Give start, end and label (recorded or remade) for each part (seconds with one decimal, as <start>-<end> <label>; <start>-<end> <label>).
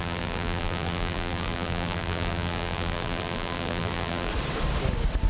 0.0-4.3 remade; 4.3-5.3 recorded